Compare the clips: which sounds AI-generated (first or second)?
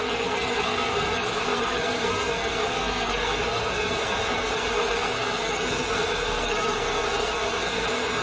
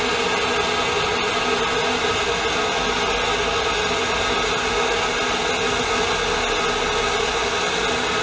first